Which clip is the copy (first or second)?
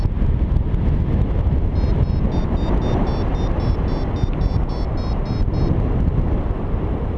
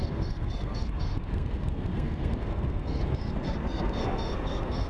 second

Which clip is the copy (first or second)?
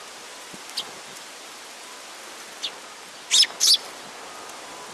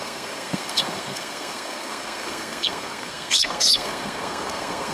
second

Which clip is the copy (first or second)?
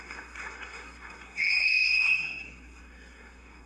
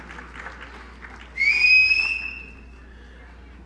first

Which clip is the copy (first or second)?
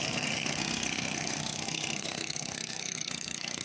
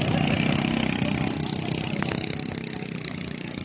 first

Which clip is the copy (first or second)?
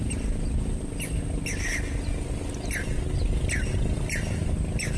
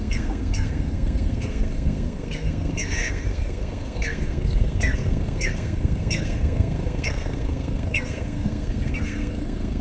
second